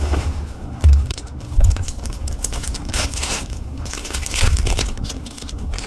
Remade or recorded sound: remade